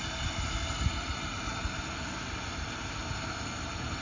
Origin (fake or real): real